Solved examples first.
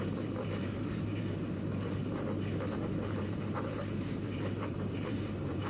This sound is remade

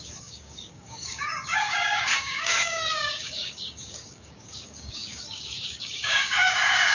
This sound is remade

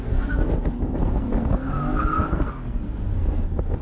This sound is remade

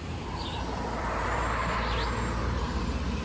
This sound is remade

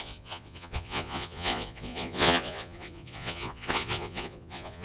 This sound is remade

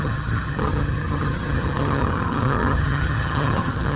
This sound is remade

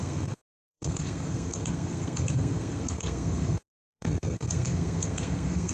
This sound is remade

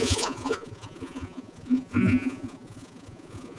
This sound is remade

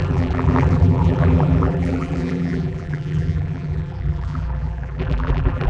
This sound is remade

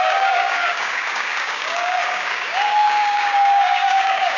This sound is remade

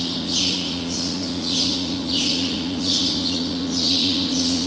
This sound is remade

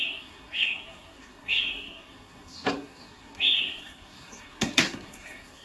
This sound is remade